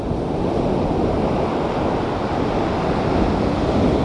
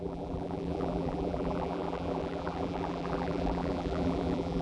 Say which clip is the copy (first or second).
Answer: second